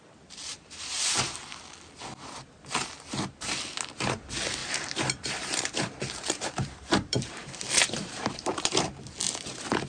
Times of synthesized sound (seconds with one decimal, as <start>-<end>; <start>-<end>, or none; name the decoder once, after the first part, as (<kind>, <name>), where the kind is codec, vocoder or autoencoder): 0.5-1.6 (vocoder, BigVGAN v2); 4.6-8.7